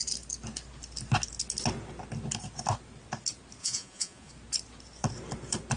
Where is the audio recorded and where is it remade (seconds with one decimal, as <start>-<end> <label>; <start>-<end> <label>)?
0.0-3.6 recorded; 3.6-4.3 remade; 4.3-5.8 recorded